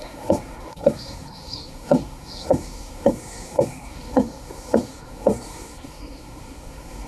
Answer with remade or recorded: remade